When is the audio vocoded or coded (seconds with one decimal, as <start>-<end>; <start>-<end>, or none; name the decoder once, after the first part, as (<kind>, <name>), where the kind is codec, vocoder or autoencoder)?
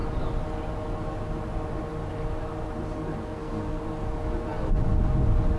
3.2-3.8 (codec, SNAC)